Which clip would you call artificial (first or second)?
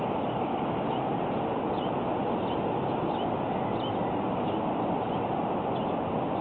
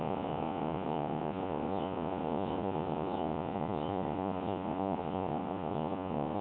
second